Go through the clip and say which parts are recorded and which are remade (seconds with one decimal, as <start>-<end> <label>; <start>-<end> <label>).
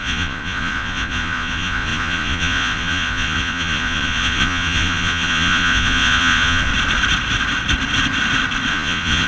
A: 0.0-6.7 remade; 6.7-8.7 recorded; 8.7-9.3 remade